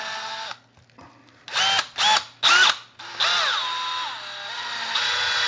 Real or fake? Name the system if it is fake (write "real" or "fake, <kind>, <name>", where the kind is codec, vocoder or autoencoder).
real